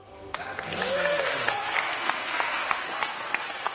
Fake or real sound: fake